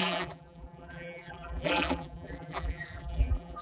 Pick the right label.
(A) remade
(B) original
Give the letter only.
A